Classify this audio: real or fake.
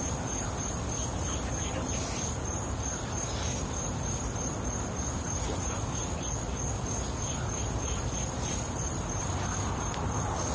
real